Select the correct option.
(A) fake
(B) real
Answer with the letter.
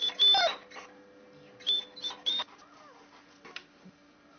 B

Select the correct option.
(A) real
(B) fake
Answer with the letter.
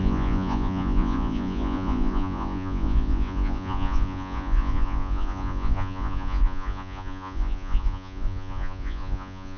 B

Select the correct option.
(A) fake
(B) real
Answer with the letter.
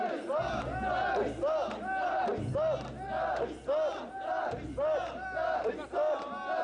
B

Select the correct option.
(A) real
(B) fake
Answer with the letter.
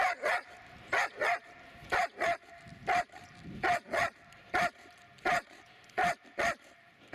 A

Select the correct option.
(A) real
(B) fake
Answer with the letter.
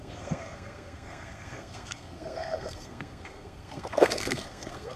B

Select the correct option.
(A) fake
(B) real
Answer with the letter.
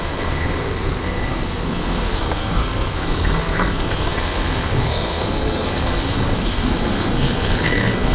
A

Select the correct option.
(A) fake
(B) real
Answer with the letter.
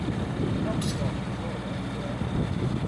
B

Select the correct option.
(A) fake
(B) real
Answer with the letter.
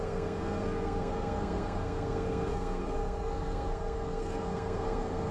A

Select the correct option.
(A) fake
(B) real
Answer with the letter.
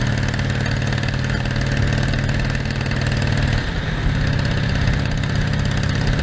B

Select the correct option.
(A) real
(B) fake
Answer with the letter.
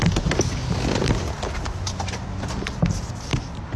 A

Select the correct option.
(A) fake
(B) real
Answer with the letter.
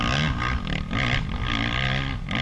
B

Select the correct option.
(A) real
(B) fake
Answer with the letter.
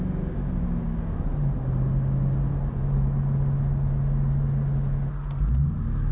A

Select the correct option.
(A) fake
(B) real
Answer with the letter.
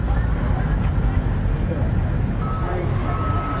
B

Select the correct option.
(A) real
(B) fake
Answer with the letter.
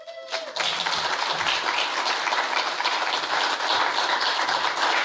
A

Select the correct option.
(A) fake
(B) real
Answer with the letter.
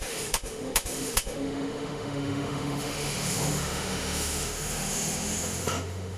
A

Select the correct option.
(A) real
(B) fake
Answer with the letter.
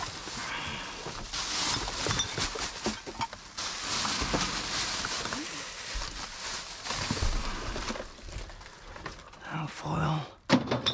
A